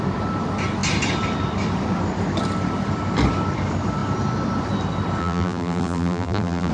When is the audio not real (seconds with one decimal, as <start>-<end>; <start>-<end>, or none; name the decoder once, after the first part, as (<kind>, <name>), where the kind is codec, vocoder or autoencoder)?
5.2-6.7 (vocoder, BigVGAN v2)